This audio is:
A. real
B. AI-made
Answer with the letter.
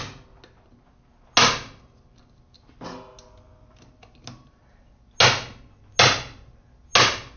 A